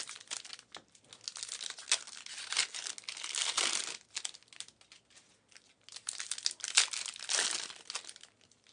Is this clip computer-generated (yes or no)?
no